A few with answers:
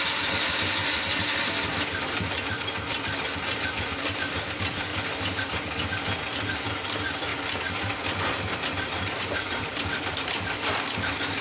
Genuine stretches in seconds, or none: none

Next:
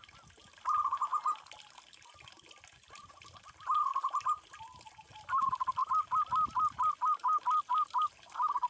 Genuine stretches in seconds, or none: 0.0-8.7

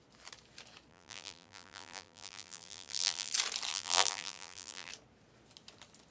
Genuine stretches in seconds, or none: 0.0-0.9; 3.3-3.7; 4.9-6.1

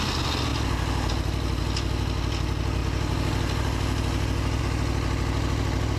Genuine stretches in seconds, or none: 0.0-6.0

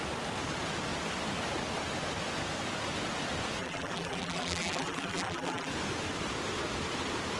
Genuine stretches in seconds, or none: 0.0-3.6; 5.7-7.4

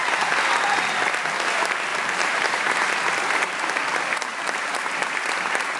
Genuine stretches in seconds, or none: 0.0-1.9; 2.9-5.8